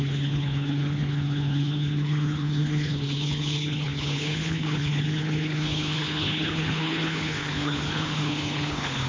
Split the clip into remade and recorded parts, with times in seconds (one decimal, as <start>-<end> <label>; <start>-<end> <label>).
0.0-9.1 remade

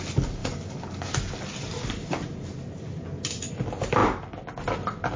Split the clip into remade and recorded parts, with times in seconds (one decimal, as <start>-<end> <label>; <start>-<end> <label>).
0.0-5.2 recorded

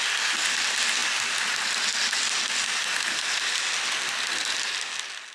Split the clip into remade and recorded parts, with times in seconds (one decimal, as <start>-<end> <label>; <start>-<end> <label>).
0.0-5.3 recorded